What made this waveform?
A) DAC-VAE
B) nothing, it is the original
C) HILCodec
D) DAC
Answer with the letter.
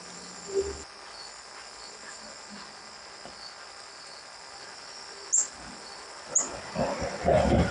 B